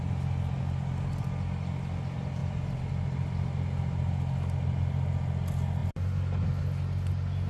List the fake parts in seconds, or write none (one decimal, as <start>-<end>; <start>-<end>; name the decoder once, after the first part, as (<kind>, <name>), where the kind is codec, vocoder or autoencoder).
2.4-2.9 (vocoder, BigVGAN v2)